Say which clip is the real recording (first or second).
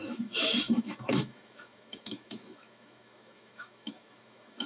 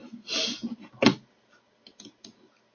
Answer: second